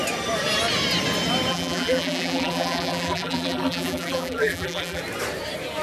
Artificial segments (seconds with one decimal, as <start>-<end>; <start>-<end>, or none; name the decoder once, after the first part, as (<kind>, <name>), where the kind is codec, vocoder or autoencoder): 1.5-5.0 (vocoder, BigVGAN v2)